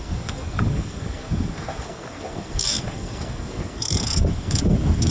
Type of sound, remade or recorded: remade